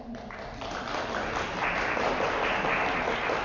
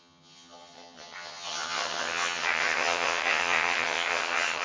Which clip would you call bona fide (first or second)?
first